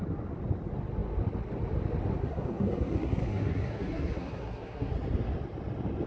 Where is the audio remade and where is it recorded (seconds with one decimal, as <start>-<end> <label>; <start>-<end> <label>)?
0.0-2.2 recorded; 2.2-4.9 remade; 4.9-6.1 recorded